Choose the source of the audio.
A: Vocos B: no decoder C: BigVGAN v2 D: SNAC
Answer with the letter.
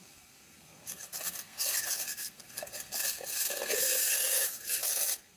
D